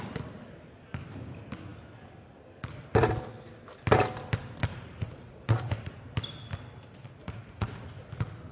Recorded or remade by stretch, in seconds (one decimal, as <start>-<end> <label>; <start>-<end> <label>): 0.0-4.7 recorded; 4.7-6.0 remade; 6.0-7.2 recorded; 7.2-7.9 remade; 7.9-8.5 recorded